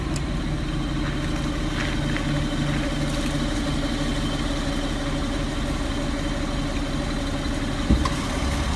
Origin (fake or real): real